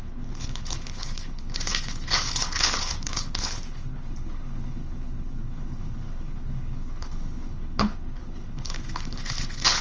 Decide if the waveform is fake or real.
fake